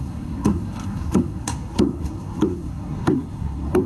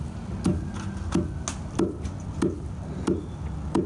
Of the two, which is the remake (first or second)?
first